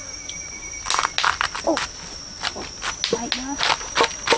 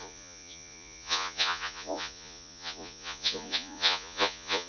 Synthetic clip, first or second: second